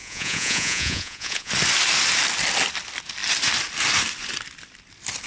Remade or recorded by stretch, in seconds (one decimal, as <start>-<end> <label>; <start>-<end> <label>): 0.0-1.5 remade; 1.5-5.3 recorded